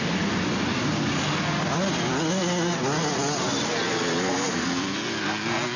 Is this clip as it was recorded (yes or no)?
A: yes